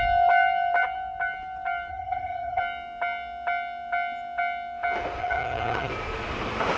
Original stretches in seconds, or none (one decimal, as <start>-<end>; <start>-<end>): 0.0-1.9; 2.6-5.2; 5.9-6.8